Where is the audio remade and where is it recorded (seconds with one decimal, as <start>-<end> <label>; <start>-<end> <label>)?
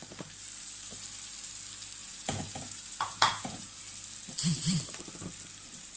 0.0-2.0 recorded; 2.0-3.8 remade; 3.8-6.0 recorded